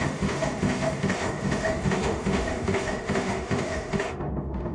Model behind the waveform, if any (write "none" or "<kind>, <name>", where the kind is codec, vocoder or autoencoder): autoencoder, DAC-VAE